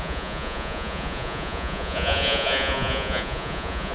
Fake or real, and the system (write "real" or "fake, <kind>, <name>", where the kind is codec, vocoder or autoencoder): fake, vocoder, Vocos